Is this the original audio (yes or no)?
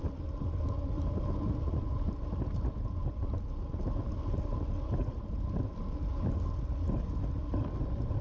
yes